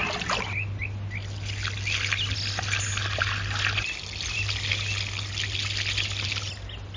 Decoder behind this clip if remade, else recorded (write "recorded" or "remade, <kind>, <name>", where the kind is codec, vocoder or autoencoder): recorded